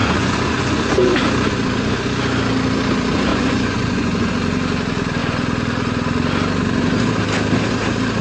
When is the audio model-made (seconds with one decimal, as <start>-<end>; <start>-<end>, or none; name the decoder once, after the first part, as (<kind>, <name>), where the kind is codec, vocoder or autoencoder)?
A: 0.0-1.2 (vocoder, Vocos); 3.3-4.3